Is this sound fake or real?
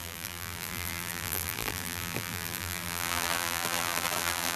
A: fake